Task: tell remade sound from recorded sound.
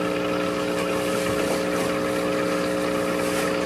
recorded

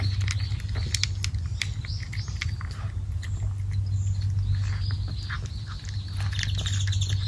recorded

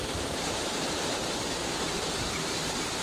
remade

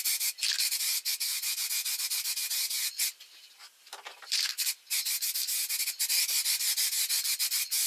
recorded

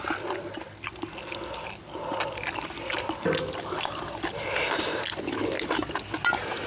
recorded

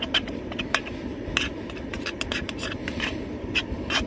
remade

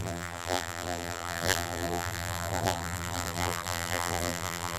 remade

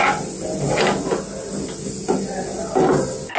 recorded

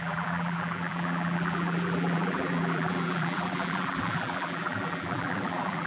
remade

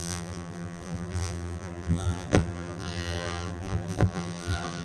remade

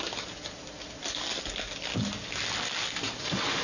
recorded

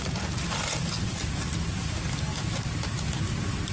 recorded